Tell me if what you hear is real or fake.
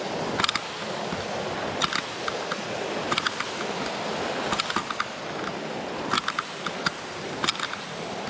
real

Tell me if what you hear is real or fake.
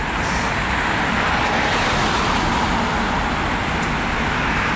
real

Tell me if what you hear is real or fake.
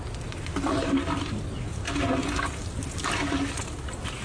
real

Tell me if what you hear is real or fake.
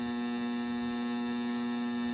real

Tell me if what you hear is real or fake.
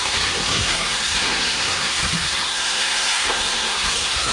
fake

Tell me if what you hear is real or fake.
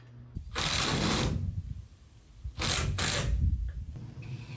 real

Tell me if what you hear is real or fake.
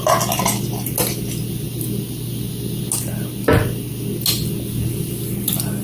real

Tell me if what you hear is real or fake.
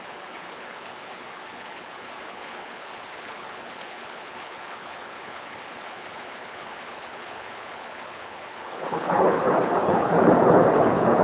fake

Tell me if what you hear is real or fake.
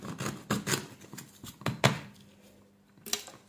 real